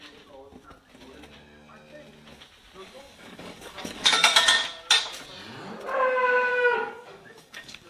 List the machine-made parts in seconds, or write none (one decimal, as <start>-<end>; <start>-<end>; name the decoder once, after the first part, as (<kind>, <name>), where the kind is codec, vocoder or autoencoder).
2.8-4.6 (codec, DAC); 6.5-7.9